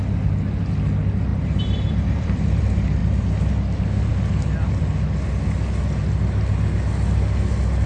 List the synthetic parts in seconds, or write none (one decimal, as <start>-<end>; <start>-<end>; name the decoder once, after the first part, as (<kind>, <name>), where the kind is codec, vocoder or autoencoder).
1.3-2.6 (vocoder, BigVGAN v2); 3.0-3.5